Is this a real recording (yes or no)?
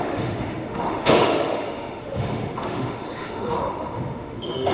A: no